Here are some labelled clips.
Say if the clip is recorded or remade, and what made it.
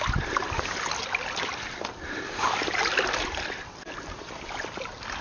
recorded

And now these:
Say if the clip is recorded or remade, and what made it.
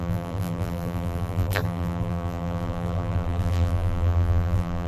remade, vocoder, BigVGAN v2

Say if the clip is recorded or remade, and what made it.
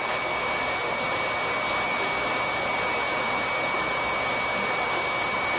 recorded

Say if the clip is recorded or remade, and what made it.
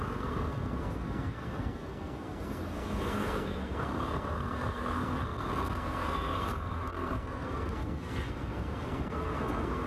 remade, codec, SNAC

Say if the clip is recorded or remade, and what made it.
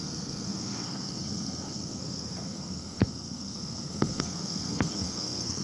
remade, codec, SNAC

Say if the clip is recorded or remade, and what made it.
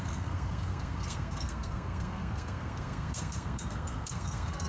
remade, codec, SNAC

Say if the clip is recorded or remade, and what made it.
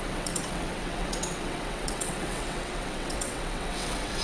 remade, vocoder, WaveNeXt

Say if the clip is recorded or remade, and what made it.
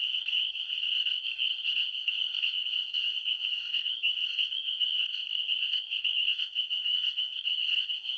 remade, codec, SNAC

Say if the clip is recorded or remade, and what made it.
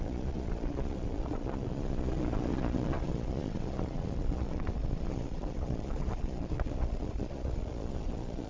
remade, vocoder, Vocos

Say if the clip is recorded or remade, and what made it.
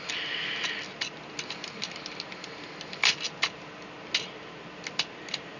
recorded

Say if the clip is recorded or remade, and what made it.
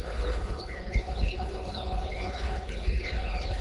remade, codec, HILCodec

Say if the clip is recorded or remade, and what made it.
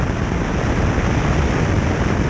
recorded